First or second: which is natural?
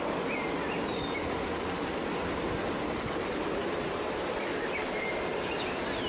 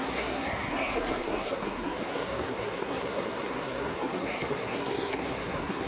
first